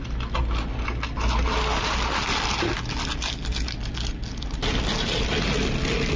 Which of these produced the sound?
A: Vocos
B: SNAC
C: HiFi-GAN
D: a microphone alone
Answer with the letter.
D